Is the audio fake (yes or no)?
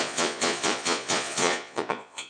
yes